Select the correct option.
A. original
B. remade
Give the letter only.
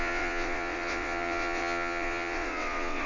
B